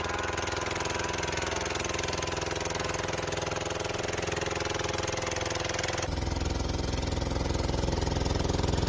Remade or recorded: recorded